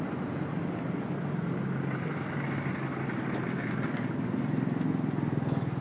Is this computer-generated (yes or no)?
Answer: no